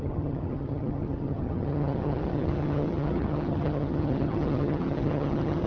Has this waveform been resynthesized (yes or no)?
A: yes